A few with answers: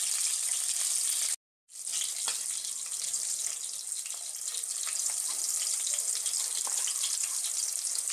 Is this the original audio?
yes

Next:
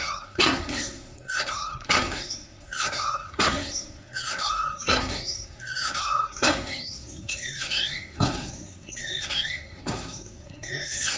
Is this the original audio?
no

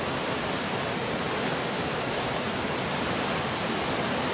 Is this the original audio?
yes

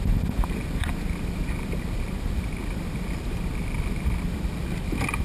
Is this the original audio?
yes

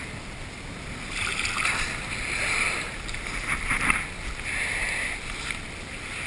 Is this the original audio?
yes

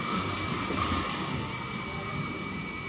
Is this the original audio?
yes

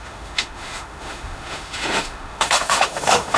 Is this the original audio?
no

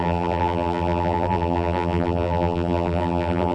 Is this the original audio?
no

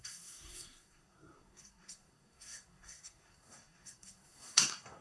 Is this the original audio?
no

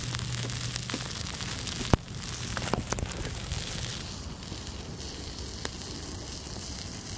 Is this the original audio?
yes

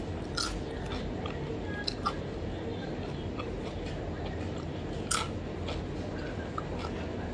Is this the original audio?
yes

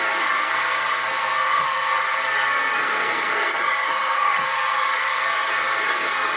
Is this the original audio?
no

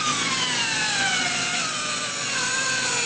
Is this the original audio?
no